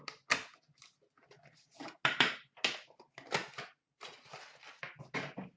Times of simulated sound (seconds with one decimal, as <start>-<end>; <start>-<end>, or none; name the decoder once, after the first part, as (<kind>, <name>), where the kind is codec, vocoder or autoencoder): none